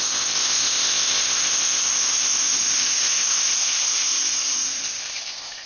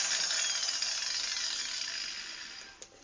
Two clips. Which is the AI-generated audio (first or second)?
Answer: first